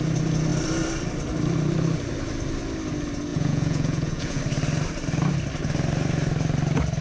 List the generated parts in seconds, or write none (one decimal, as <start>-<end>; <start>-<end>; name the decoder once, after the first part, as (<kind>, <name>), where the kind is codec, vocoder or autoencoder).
3.3-4.4 (vocoder, Vocos)